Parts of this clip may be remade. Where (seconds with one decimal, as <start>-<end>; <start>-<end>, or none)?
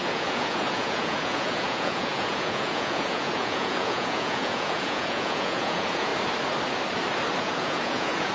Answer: 0.0-6.1; 7.4-8.3